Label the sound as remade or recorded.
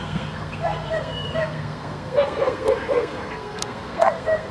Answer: remade